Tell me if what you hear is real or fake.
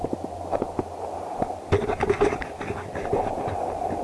real